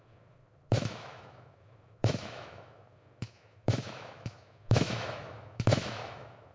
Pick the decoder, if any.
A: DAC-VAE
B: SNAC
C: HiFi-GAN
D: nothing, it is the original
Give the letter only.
A